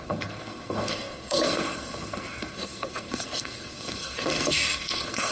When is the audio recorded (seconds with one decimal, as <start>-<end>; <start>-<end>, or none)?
none